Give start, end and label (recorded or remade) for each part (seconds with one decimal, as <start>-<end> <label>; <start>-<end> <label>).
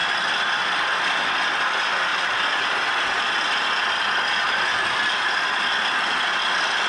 0.0-6.9 recorded